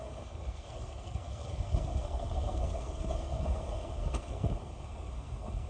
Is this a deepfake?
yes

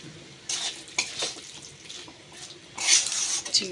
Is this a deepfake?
no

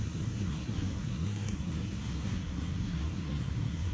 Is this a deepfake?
yes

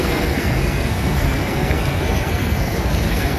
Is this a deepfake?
yes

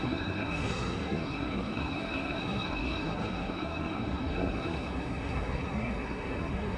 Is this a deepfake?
yes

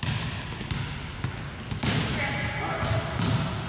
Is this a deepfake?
no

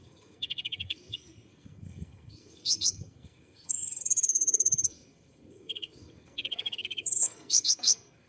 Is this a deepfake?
yes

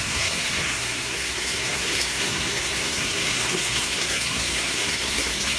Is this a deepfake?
yes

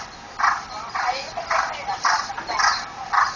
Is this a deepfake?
no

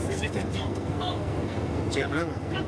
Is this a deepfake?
yes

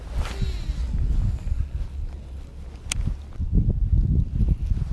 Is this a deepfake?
no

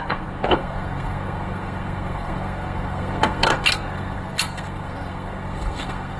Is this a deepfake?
yes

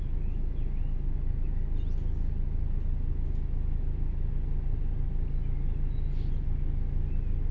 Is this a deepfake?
no